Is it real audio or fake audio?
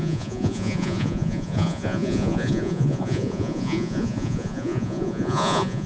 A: fake